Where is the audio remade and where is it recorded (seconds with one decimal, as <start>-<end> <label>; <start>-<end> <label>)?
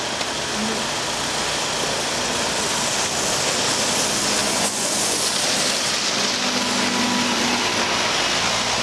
0.0-4.4 recorded; 4.4-5.3 remade; 5.3-8.8 recorded